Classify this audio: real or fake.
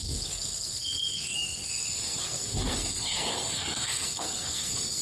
fake